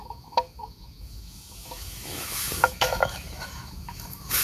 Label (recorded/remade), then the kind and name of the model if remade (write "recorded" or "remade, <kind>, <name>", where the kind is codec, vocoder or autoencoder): remade, autoencoder, DAC-VAE